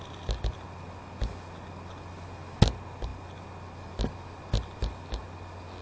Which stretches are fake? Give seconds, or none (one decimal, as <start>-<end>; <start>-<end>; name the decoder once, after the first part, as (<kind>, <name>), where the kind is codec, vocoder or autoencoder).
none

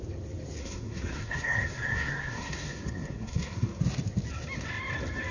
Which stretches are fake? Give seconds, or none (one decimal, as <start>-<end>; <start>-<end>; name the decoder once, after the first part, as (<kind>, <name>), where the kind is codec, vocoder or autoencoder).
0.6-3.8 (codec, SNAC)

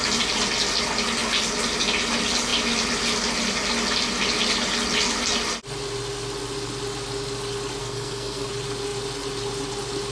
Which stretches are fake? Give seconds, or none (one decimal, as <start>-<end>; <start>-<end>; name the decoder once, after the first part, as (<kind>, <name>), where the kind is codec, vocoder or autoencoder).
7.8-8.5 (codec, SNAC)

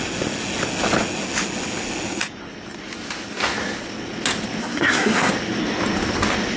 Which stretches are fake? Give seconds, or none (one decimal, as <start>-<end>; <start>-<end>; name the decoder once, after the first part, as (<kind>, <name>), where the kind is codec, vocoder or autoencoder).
4.6-5.3 (codec, SNAC)

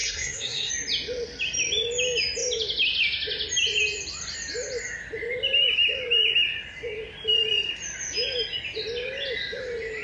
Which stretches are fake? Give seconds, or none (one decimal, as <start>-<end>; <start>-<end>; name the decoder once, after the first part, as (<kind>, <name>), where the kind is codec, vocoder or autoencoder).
0.0-0.7 (codec, SNAC)

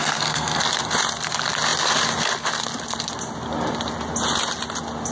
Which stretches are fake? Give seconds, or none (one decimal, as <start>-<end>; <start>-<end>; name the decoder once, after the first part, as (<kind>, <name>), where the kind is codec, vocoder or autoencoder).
0.0-0.6 (codec, SNAC)

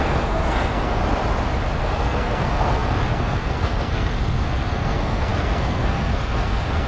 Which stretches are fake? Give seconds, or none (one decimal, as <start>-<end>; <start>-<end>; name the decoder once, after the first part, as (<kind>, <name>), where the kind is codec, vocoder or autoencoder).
0.0-1.0 (codec, SNAC); 1.8-6.9

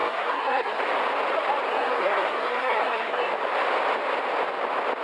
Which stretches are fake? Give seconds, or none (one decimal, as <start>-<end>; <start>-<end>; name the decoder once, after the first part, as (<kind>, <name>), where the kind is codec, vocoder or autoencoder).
0.0-0.8 (codec, SNAC); 1.7-3.3